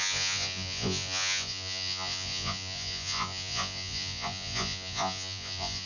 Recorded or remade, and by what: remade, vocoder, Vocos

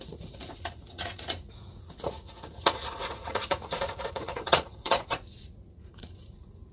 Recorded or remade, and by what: remade, vocoder, Vocos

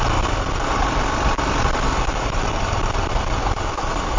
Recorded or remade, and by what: recorded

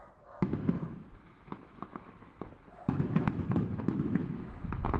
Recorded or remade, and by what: remade, autoencoder, DAC-VAE